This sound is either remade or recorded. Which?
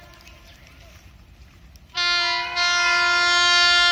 recorded